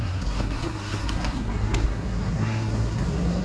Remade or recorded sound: remade